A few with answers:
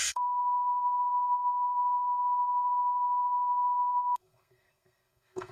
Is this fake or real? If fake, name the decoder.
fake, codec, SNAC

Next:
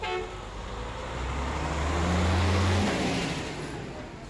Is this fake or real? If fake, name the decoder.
real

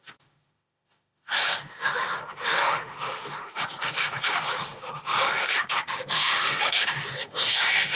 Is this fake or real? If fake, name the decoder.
fake, autoencoder, DAC-VAE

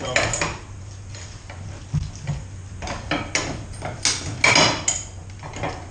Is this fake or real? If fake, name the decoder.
real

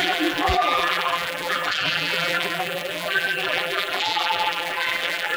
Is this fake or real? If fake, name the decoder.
fake, vocoder, BigVGAN v2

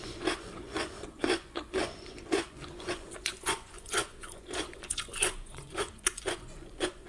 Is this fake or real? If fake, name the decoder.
fake, vocoder, Vocos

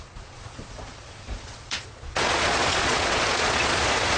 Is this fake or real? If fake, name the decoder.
fake, vocoder, Vocos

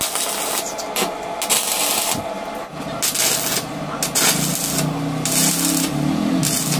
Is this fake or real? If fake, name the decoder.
real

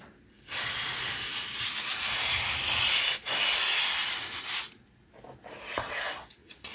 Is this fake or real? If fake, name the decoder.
real